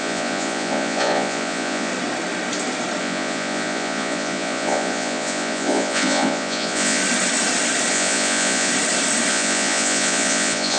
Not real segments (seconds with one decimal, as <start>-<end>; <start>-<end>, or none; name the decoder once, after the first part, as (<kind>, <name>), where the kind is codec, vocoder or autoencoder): 0.0-1.9 (vocoder, Vocos); 3.0-7.0; 7.9-8.7; 9.3-10.8